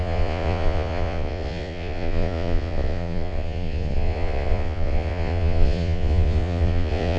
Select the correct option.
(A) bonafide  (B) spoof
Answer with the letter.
B